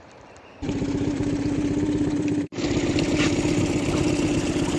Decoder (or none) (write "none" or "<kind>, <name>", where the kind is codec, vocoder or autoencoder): none